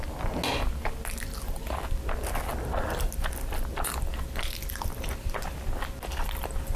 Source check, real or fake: real